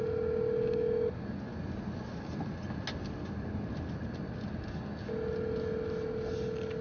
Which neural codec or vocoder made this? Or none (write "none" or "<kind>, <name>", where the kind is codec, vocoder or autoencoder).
none